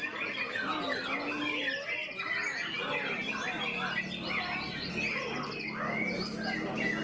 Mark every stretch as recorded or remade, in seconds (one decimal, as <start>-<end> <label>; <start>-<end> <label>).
0.0-7.0 recorded